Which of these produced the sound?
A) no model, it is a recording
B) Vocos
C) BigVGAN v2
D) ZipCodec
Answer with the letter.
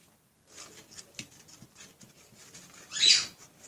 A